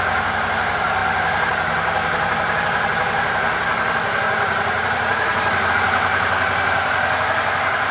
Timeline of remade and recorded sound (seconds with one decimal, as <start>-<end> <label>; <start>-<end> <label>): 0.0-7.9 recorded